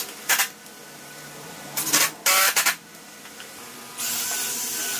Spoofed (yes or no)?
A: no